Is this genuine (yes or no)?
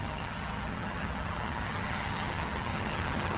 no